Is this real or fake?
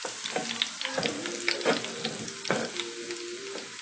real